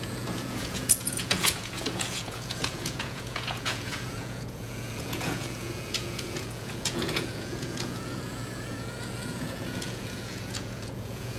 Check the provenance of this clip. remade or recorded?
remade